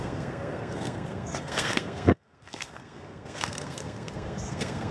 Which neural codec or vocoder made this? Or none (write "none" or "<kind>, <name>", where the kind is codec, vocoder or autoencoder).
codec, SNAC